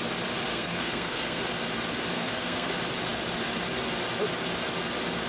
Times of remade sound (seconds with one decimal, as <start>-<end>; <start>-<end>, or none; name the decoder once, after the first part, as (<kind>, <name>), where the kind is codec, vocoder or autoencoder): 0.5-1.4 (codec, SNAC); 2.1-2.7